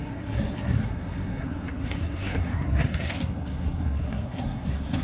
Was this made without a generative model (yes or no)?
no